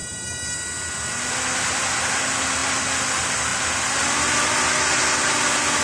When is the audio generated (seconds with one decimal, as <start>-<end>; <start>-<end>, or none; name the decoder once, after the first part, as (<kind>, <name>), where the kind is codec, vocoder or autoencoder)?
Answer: none